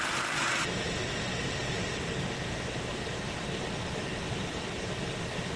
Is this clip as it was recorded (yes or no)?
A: yes